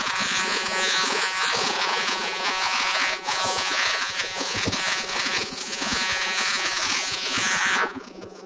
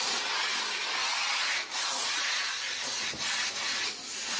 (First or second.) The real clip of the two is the second